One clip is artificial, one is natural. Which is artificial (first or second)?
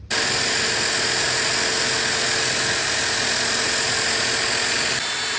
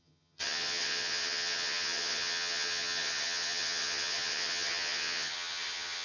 second